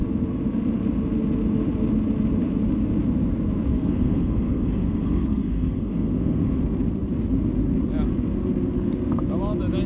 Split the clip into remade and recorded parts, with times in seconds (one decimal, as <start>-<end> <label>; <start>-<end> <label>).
0.0-3.8 recorded; 3.8-6.6 remade; 6.6-9.9 recorded